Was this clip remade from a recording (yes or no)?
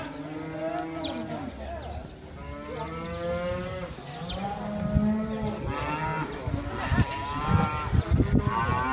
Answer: no